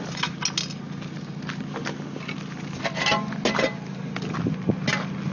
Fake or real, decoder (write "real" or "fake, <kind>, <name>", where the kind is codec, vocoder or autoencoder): real